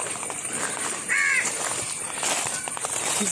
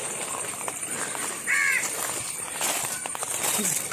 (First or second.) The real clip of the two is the first